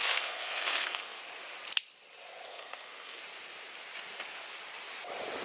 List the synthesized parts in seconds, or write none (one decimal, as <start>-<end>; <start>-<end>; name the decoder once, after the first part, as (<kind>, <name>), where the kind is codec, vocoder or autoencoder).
0.0-1.2 (codec, SNAC); 2.5-3.2